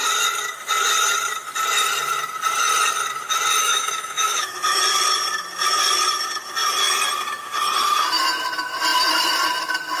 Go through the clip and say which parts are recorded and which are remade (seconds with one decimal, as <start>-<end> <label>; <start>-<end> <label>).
0.0-3.6 recorded; 3.6-4.8 remade; 4.8-10.0 recorded